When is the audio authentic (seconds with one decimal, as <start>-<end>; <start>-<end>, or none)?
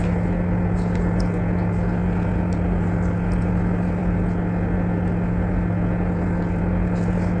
0.0-7.4